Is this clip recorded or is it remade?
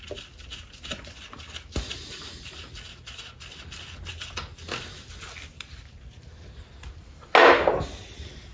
recorded